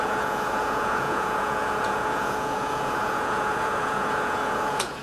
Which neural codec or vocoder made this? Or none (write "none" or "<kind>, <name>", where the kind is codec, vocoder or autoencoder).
vocoder, Vocos